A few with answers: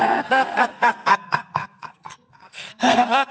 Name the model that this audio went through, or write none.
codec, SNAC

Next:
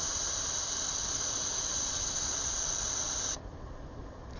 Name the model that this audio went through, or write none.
none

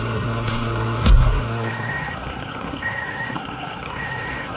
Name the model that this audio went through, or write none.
codec, SNAC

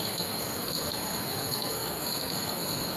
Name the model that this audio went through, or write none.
codec, SNAC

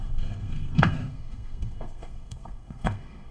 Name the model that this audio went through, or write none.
codec, SNAC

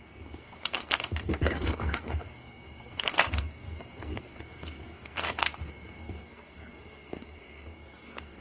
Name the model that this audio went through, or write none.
codec, SNAC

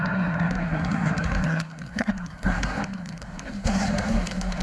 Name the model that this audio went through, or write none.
codec, SNAC